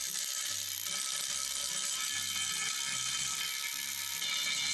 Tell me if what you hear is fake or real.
real